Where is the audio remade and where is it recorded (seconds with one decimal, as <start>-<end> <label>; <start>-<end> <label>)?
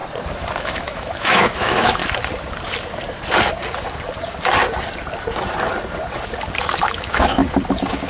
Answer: 0.0-0.6 recorded; 0.6-2.0 remade; 2.0-6.6 recorded; 6.6-7.4 remade; 7.4-8.1 recorded